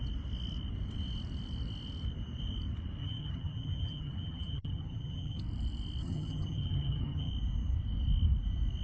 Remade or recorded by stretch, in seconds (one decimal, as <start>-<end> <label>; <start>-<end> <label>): 0.0-3.0 recorded; 3.0-5.4 remade; 5.4-6.0 recorded; 6.0-7.3 remade; 7.3-8.8 recorded